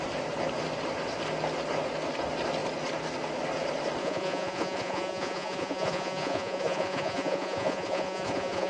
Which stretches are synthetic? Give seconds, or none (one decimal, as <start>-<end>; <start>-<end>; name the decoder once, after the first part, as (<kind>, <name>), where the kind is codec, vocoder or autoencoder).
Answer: 4.0-8.7 (vocoder, Vocos)